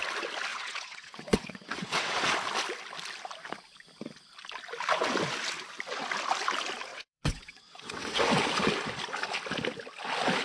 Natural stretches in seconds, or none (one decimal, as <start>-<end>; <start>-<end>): 0.0-0.5; 2.3-6.9; 8.3-10.4